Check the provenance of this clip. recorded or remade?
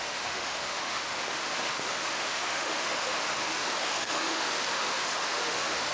remade